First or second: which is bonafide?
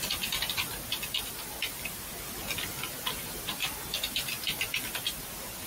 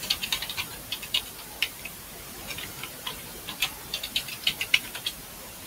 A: first